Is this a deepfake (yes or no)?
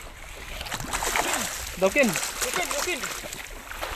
no